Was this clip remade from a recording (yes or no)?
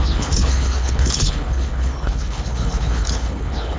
yes